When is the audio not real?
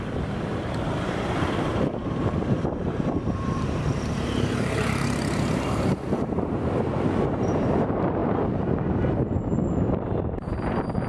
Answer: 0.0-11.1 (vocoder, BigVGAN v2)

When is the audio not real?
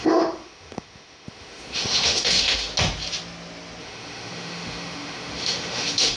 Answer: 0.0-2.7 (autoencoder, DAC-VAE); 3.8-6.2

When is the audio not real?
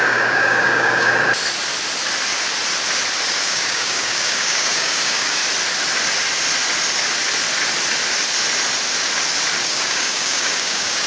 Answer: 0.0-1.1 (codec, DAC); 3.4-5.4; 9.6-11.1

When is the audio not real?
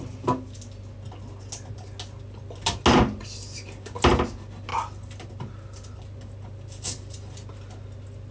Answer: none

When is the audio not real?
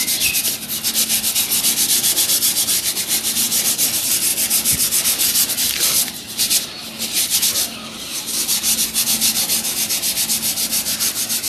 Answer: none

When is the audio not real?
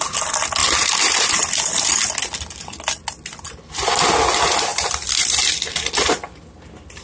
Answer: 0.6-1.3 (vocoder, BigVGAN v2); 4.7-5.9